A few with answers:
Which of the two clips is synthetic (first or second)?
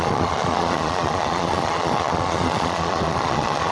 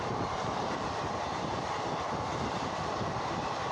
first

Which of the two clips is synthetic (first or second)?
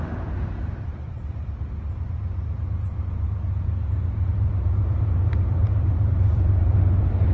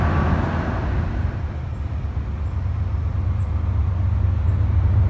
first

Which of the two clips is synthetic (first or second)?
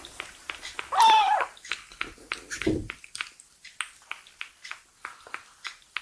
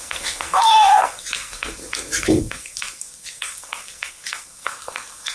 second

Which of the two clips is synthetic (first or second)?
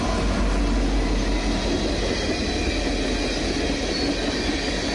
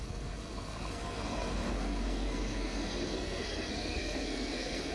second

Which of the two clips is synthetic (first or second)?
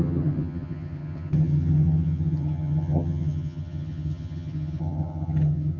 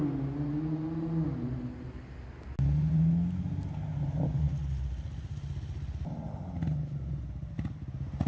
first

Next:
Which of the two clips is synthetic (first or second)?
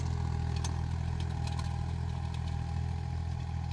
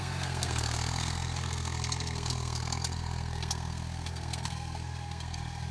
second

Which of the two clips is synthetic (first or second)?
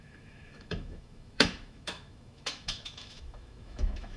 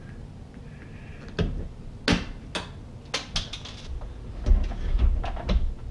first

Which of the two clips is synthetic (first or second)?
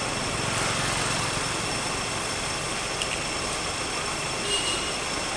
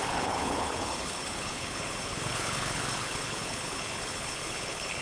second